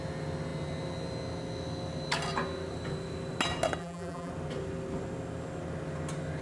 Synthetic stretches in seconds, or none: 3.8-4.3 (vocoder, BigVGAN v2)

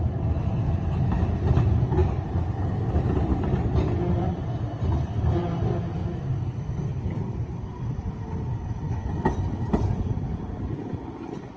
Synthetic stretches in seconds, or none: none

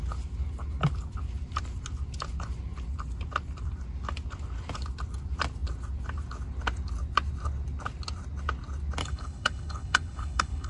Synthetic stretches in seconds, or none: 9.0-10.7 (codec, HILCodec)

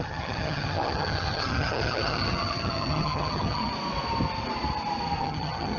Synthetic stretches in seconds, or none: 0.0-3.7 (vocoder, HiFi-GAN); 5.2-5.8

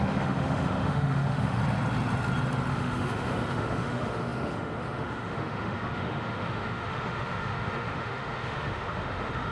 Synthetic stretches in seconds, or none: 0.0-1.6 (autoencoder, DAC-VAE); 2.7-9.5